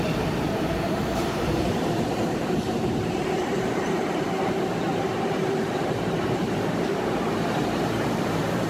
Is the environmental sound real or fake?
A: fake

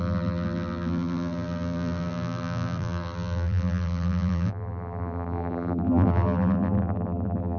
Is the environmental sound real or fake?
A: fake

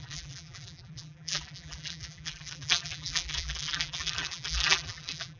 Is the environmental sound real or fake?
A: fake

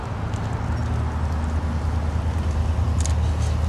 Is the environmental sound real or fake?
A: real